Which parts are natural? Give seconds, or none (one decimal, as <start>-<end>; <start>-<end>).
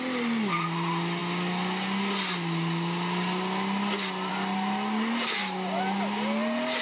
0.0-6.8